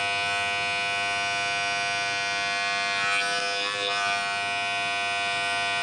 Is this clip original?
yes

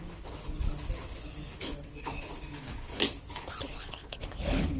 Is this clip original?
no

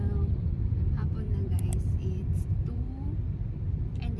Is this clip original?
no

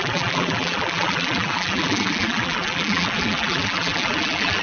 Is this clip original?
no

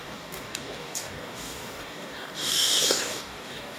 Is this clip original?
no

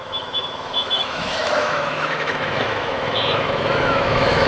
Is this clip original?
no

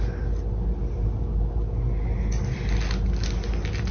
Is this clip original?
yes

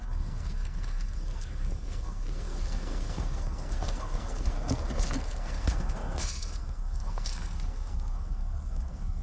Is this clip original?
no